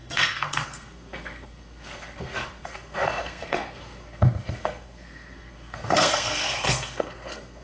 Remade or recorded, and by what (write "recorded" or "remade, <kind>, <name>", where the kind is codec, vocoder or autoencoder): remade, codec, SNAC